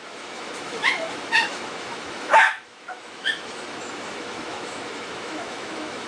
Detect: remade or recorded remade